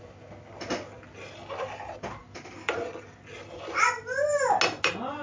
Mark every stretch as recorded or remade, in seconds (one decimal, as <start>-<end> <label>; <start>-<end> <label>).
0.0-2.2 recorded; 2.2-3.2 remade; 3.2-5.2 recorded